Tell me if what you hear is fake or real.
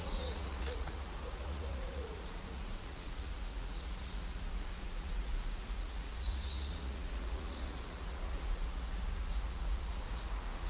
fake